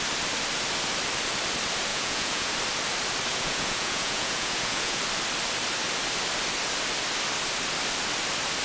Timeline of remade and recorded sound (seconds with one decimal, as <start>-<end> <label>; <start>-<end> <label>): 0.0-1.9 recorded; 1.9-2.5 remade; 2.5-3.3 recorded; 3.3-5.0 remade; 5.0-8.6 recorded

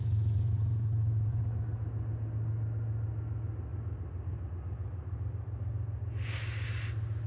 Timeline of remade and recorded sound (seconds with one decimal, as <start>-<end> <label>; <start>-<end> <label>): 0.0-1.4 remade; 1.4-7.3 recorded

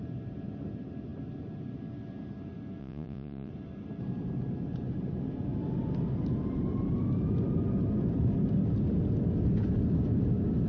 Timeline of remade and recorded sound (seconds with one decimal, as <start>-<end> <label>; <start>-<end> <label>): 0.0-2.8 recorded; 2.8-3.5 remade; 3.5-10.7 recorded

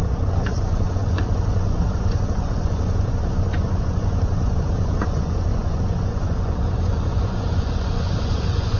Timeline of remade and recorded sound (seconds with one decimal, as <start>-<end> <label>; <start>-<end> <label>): 0.0-8.8 remade